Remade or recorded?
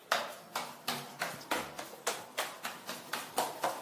recorded